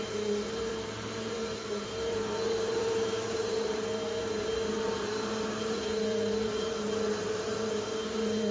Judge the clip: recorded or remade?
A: remade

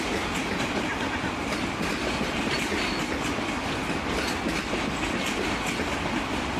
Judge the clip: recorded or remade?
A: recorded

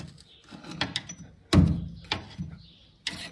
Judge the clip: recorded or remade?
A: recorded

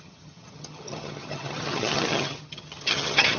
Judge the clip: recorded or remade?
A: remade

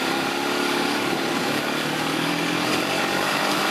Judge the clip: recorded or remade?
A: remade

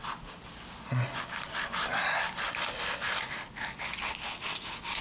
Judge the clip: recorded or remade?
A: recorded